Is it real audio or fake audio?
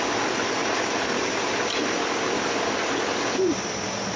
real